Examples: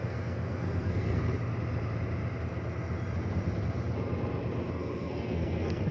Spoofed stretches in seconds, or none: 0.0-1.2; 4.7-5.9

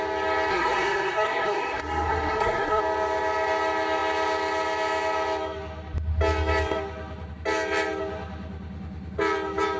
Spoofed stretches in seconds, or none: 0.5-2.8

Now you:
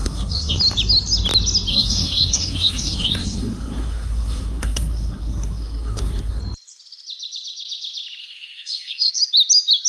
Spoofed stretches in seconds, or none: 0.0-0.6; 1.7-6.4; 8.2-9.1